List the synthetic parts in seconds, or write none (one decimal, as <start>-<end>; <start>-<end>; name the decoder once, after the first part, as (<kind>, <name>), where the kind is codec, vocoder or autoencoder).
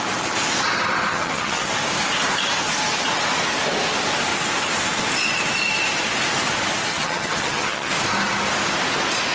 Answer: 1.1-1.7 (vocoder, HiFi-GAN); 6.9-7.9